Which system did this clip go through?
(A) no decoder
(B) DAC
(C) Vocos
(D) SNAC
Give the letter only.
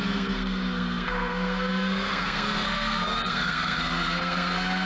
D